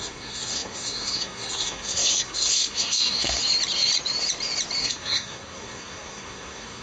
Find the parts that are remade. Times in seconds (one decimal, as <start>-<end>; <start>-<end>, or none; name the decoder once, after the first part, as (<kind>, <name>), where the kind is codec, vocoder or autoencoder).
0.0-3.4 (codec, SNAC); 4.8-6.8